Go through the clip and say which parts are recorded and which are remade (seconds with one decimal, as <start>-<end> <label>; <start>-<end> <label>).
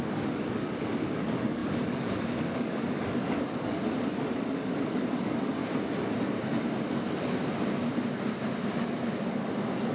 0.0-5.6 remade; 5.6-9.3 recorded; 9.3-9.9 remade